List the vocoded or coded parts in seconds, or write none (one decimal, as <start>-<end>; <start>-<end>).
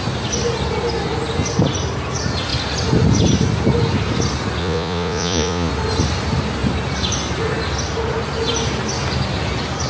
4.6-5.7